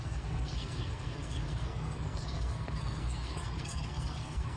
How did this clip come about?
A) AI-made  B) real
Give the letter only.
A